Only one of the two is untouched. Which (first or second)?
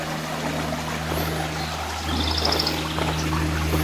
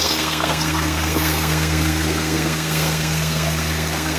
first